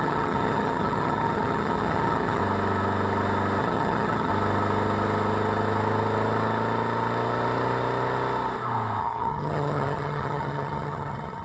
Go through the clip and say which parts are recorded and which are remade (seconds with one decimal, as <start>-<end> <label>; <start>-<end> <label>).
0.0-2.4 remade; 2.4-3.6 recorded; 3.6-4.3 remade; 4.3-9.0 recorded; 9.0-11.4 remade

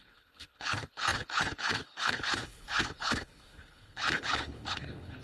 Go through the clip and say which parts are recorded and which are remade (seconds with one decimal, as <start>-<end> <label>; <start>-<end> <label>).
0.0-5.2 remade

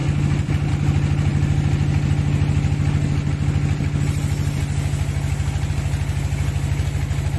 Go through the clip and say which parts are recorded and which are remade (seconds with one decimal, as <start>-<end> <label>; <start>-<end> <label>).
0.0-7.4 recorded

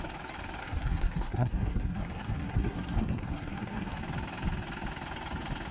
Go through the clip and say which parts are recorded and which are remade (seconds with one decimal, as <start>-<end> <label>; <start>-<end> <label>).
0.0-0.6 recorded; 0.6-4.0 remade; 4.0-5.7 recorded

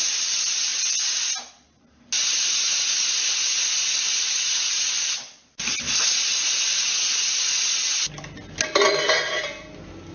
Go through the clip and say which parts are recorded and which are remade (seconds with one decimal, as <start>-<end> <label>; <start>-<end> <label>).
0.0-10.1 recorded